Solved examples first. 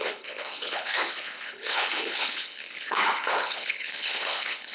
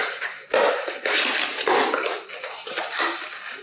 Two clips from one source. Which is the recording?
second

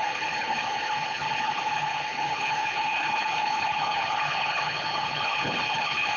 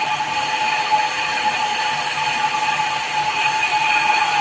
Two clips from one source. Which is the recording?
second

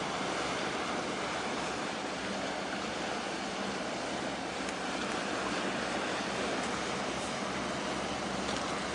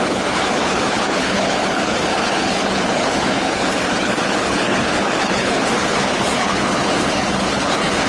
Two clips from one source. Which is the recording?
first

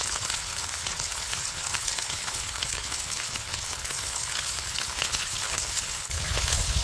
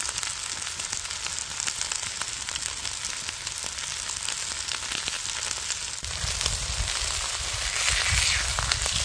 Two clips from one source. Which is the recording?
second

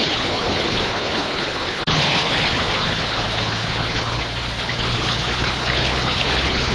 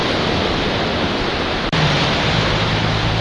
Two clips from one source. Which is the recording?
second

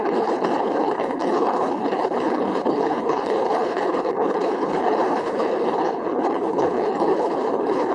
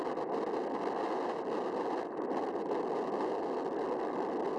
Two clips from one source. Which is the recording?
second